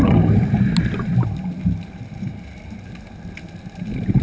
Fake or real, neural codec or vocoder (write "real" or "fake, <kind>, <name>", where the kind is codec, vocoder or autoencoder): real